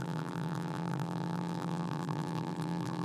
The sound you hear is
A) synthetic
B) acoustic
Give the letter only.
A